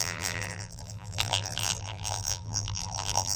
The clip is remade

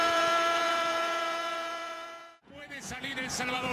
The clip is remade